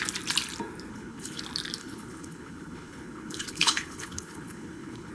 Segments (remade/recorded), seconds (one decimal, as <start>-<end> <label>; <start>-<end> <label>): 0.0-0.9 recorded; 0.9-1.4 remade; 1.4-1.8 recorded; 1.8-5.1 remade